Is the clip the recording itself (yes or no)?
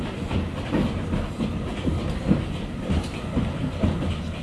yes